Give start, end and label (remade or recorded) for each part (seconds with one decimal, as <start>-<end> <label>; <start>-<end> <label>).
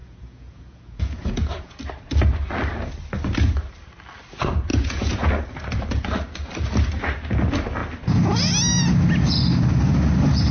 0.0-1.8 remade; 1.8-4.7 recorded; 4.7-5.3 remade; 5.3-10.5 recorded